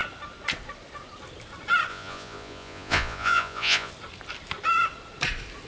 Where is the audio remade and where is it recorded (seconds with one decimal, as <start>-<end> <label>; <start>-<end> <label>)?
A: 0.0-1.9 recorded; 1.9-3.9 remade; 3.9-5.7 recorded